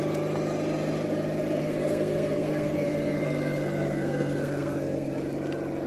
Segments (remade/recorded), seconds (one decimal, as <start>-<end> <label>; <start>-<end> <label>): 0.0-1.6 recorded; 1.6-5.1 remade; 5.1-5.9 recorded